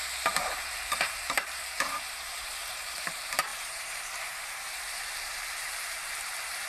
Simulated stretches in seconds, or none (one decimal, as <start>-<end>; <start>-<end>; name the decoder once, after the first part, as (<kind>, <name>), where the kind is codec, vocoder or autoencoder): 0.0-6.7 (vocoder, BigVGAN v2)